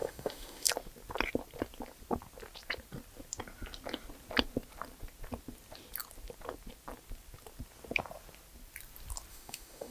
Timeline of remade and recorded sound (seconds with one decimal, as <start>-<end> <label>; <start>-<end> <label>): 0.0-0.7 remade; 0.7-9.3 recorded; 9.3-9.9 remade